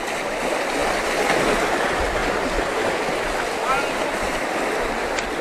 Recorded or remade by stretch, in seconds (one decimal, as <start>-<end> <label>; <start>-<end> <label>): 0.0-5.4 recorded